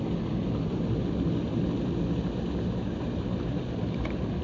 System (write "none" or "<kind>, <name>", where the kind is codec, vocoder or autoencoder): none